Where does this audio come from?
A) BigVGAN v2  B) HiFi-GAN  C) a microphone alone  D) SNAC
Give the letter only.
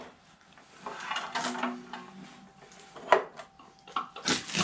C